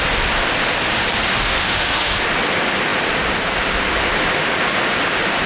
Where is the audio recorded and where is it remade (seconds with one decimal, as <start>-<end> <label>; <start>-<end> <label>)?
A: 0.0-1.3 recorded; 1.3-2.1 remade; 2.1-5.5 recorded